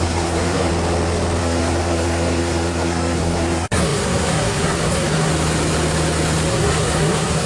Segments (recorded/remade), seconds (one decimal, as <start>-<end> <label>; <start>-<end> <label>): 0.0-0.7 remade; 0.7-1.4 recorded; 1.4-5.3 remade; 5.3-6.5 recorded; 6.5-7.5 remade